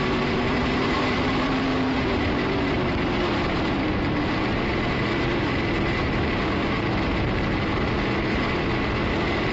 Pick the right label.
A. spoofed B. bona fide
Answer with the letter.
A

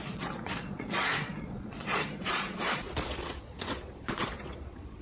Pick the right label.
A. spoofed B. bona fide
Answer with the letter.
A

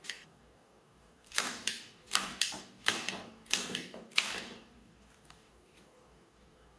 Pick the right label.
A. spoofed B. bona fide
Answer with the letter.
A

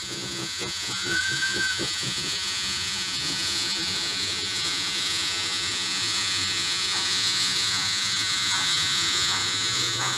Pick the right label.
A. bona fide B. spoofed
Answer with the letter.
B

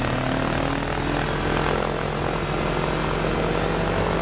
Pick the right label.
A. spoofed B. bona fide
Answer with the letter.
B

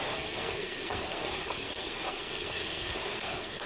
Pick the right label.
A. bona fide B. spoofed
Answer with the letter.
B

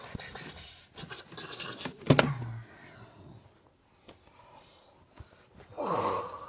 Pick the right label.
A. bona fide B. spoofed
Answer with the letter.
A